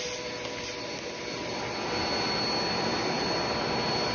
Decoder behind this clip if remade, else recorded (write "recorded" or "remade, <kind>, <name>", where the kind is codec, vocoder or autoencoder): recorded